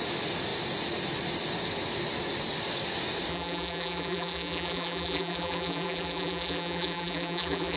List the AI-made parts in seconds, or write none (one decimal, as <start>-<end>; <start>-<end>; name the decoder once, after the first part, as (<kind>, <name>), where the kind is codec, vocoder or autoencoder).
3.3-7.8 (vocoder, BigVGAN v2)